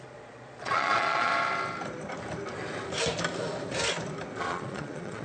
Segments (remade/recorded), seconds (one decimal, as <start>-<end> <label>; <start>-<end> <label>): 0.0-1.3 remade; 1.3-4.4 recorded; 4.4-5.2 remade

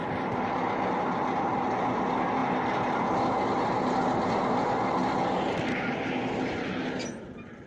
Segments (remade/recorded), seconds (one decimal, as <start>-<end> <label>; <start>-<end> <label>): 0.0-7.7 recorded